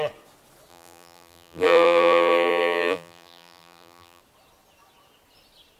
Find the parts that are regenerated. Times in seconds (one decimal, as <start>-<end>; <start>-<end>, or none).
0.7-4.2